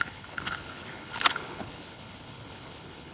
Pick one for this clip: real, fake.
fake